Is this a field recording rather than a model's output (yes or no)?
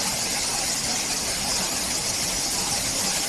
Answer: yes